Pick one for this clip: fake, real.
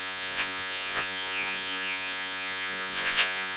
fake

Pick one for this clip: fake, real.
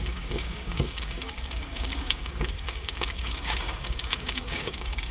fake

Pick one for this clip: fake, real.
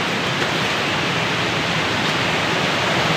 real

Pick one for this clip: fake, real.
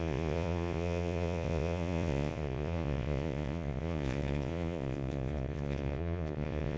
fake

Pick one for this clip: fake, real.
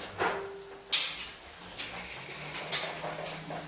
real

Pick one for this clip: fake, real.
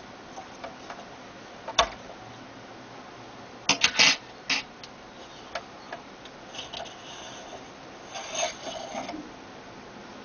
real